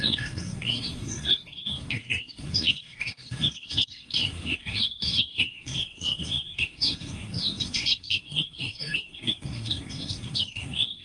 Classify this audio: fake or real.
fake